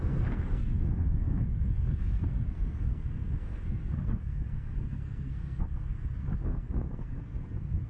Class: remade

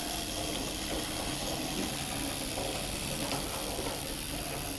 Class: recorded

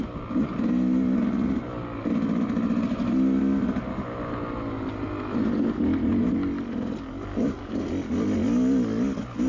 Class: recorded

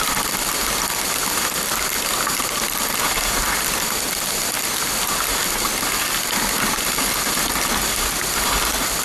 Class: recorded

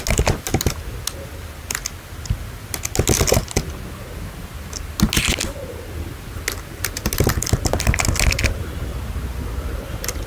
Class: recorded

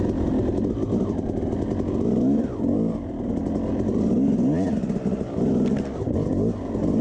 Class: recorded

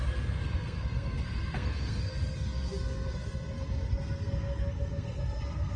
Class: remade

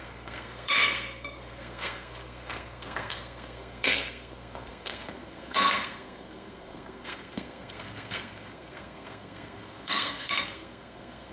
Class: remade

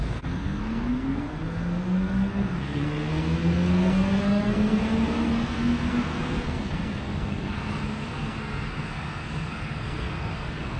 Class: remade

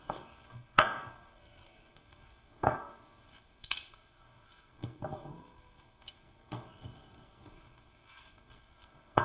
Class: remade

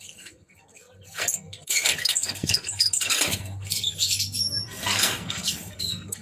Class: remade